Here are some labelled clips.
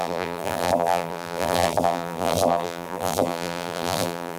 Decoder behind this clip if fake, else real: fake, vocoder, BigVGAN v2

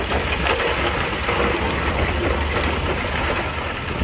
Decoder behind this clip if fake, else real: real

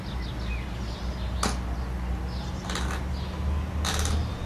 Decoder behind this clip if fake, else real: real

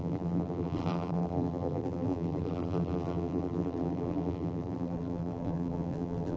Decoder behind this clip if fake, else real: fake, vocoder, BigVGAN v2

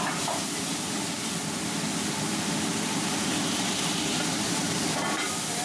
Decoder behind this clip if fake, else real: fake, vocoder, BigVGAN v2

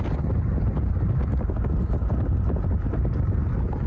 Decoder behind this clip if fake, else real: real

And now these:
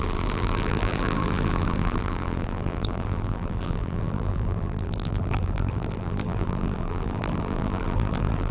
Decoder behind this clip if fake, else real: fake, vocoder, BigVGAN v2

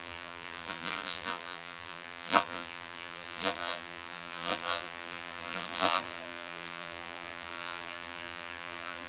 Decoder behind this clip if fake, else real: fake, vocoder, BigVGAN v2